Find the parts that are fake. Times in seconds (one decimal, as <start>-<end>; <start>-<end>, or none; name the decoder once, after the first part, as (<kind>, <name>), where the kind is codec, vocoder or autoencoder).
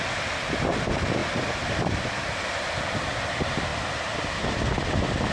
none